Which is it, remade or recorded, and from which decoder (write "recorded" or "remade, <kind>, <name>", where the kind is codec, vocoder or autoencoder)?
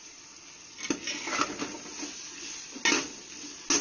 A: recorded